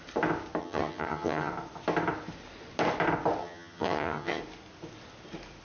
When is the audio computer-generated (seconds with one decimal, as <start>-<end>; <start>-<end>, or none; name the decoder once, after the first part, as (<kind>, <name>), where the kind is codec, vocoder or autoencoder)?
0.6-1.5 (vocoder, HiFi-GAN); 3.4-4.4

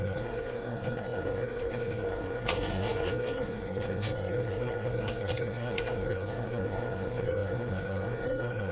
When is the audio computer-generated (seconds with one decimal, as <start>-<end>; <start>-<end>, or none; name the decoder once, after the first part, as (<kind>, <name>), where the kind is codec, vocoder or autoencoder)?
0.0-8.7 (codec, SNAC)

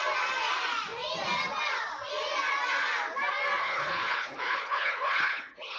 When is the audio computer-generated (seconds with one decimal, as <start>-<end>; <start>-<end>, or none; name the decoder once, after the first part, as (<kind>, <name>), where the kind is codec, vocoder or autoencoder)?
3.6-5.8 (codec, HILCodec)

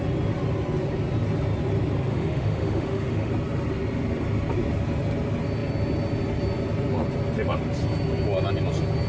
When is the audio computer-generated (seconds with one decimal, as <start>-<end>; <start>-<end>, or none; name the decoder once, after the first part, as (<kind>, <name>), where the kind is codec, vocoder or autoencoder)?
2.1-3.3 (autoencoder, DAC-VAE)

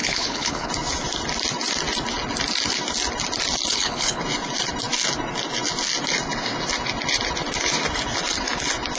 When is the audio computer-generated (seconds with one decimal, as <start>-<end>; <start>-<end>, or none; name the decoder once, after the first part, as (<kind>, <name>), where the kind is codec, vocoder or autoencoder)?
0.0-0.7 (codec, HILCodec); 3.7-4.2

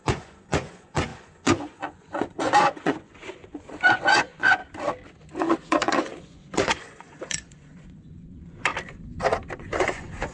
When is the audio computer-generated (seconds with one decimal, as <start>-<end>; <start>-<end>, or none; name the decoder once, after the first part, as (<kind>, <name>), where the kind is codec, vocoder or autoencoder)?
0.0-4.6 (vocoder, Vocos); 5.4-8.7; 9.6-10.3